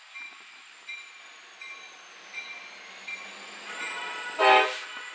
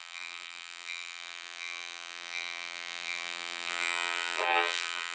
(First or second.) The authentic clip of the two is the first